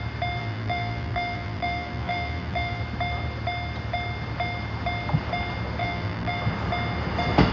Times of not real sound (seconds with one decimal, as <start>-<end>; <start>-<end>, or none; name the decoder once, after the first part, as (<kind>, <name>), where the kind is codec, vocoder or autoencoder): 0.4-2.8 (vocoder, BigVGAN v2); 5.8-6.4